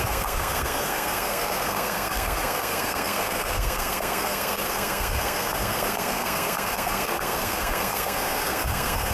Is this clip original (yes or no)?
no